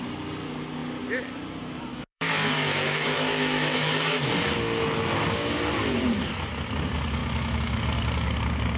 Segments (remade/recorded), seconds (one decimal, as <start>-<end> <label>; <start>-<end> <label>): 0.0-1.9 recorded; 1.9-4.3 remade; 4.3-7.2 recorded; 7.2-7.8 remade; 7.8-8.8 recorded